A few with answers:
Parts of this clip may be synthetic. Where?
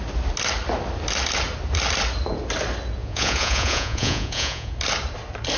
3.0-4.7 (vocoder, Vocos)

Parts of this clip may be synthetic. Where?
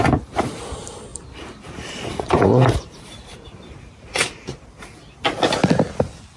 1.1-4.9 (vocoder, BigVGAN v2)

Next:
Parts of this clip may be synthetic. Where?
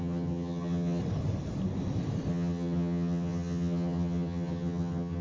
0.0-1.0 (vocoder, HiFi-GAN); 2.3-5.2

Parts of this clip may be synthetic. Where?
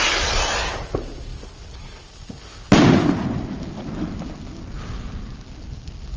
none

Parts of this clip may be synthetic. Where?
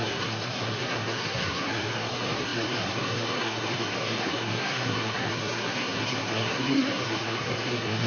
0.0-8.1 (codec, SNAC)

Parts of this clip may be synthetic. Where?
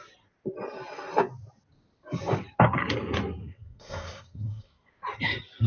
3.4-4.9 (codec, SNAC)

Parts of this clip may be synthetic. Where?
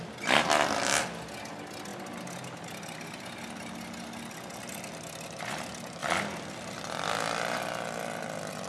none